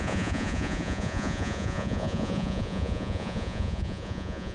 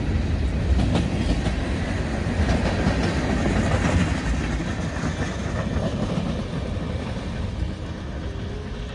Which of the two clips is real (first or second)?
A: second